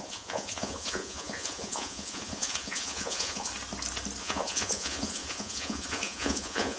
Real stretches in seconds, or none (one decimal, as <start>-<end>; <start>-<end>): 3.5-4.2